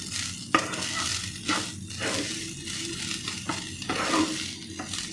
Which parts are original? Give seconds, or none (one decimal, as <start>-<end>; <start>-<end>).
0.0-5.1